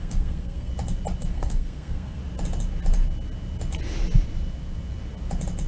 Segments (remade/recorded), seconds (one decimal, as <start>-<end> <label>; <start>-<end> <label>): 0.0-0.7 remade; 0.7-1.3 recorded; 1.3-2.2 remade; 2.2-5.7 recorded